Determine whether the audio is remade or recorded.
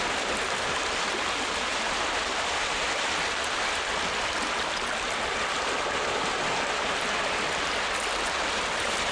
recorded